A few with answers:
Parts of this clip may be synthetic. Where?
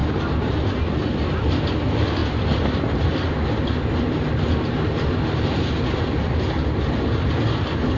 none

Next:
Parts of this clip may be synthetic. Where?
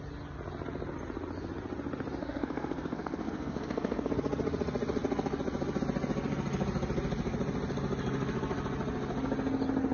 2.2-4.1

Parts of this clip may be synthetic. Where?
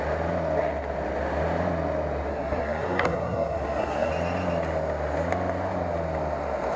2.3-4.1